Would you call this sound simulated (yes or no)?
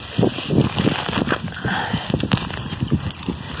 no